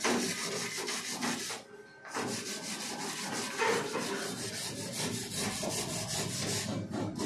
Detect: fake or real real